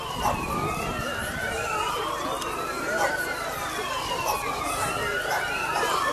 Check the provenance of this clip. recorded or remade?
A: recorded